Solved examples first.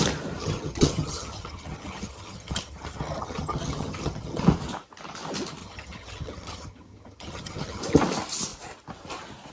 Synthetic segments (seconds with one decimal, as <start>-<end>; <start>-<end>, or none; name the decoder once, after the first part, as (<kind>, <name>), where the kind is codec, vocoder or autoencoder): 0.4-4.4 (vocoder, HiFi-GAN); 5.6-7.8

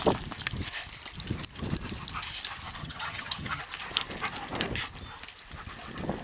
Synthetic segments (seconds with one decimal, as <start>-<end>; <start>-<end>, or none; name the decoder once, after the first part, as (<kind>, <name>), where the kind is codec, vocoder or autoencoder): 2.8-3.6 (vocoder, HiFi-GAN)

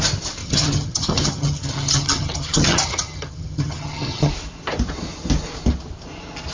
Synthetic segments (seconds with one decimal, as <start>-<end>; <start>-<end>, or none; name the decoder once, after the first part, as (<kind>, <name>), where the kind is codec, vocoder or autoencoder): 0.4-4.3 (vocoder, HiFi-GAN)

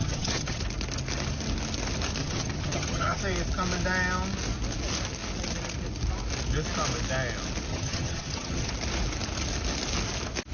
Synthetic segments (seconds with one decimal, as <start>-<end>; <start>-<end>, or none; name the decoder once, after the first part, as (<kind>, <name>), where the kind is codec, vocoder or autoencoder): 0.0-0.6 (vocoder, HiFi-GAN); 2.2-3.2; 7.7-8.7